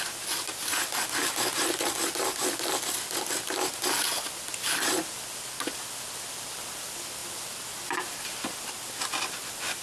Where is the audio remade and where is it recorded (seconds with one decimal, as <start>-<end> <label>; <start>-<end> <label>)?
0.0-9.8 recorded